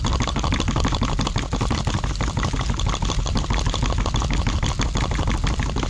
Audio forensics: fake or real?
real